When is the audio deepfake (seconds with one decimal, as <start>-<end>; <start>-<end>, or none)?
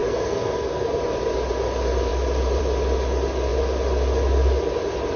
0.0-1.0